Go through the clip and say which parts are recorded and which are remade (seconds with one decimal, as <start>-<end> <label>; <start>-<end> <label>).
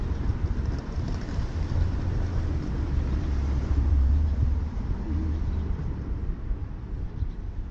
0.0-0.8 recorded; 0.8-1.5 remade; 1.5-3.6 recorded; 3.6-4.7 remade; 4.7-7.7 recorded